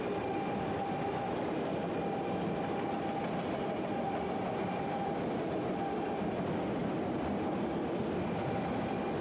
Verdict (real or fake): real